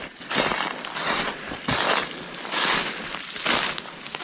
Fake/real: real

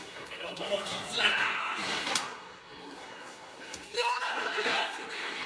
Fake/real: fake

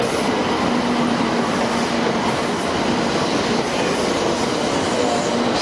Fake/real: real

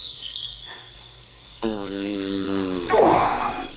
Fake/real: fake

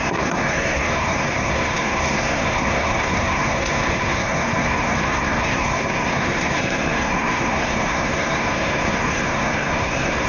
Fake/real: fake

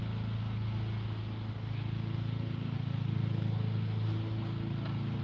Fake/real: real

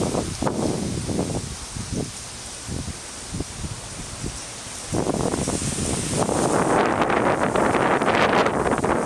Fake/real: real